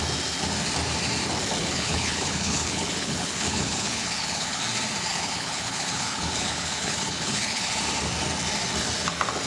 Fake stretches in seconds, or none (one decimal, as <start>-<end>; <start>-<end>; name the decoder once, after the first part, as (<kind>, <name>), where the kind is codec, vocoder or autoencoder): 1.6-4.6 (codec, HILCodec); 5.1-7.8